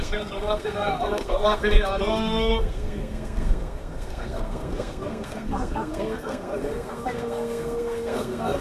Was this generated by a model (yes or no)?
yes